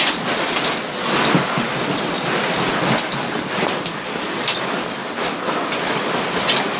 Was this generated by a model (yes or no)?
no